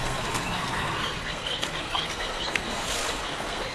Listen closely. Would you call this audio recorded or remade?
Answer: remade